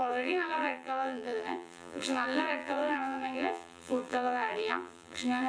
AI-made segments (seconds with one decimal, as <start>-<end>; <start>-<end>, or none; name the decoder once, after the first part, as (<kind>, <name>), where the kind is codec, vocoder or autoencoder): 0.0-5.5 (vocoder, BigVGAN v2)